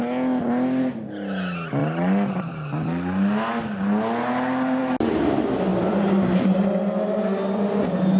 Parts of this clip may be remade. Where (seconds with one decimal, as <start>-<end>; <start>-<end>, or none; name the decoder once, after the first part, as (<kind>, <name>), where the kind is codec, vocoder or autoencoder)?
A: none